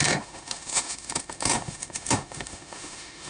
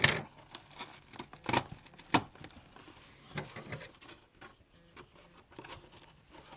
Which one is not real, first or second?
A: first